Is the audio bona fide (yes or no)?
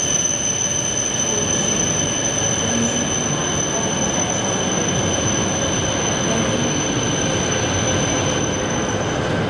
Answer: yes